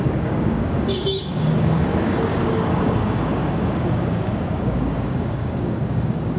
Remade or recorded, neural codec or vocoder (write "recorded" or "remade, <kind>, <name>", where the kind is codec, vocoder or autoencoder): remade, codec, DAC